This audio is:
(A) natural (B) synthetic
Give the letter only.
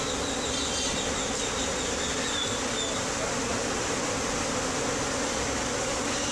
A